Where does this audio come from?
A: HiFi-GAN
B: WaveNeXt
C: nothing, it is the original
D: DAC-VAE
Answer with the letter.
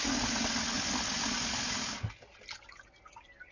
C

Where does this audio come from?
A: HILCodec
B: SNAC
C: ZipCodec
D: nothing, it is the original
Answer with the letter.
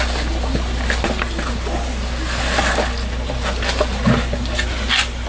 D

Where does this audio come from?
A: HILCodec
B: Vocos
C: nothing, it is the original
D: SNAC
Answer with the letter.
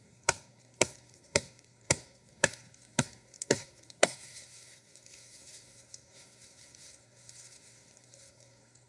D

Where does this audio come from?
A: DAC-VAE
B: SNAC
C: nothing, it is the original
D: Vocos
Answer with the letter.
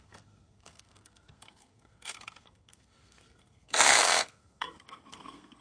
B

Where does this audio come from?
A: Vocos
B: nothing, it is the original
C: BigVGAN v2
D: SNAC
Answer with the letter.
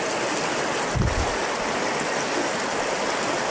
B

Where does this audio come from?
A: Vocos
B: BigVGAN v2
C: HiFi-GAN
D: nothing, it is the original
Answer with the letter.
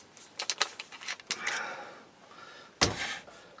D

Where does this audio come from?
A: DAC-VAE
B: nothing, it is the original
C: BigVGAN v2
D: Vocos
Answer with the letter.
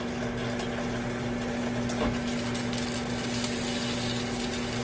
B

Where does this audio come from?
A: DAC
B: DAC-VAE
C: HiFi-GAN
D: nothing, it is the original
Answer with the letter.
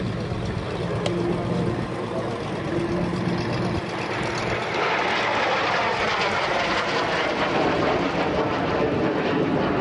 D